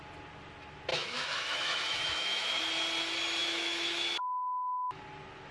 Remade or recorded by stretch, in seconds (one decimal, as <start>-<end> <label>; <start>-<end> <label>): 0.0-0.9 recorded; 0.9-2.6 remade; 2.6-3.4 recorded; 3.4-5.0 remade; 5.0-5.5 recorded